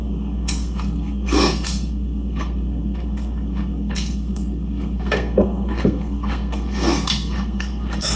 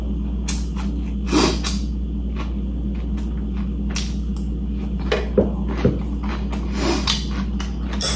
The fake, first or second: first